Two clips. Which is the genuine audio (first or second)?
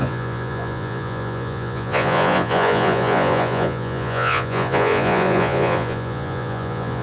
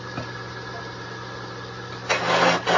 second